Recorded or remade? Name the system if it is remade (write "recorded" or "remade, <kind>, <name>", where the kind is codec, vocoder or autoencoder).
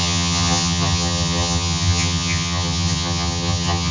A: remade, vocoder, HiFi-GAN